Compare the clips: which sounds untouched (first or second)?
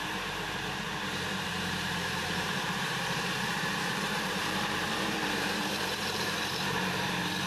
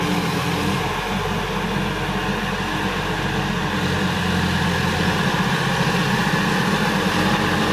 second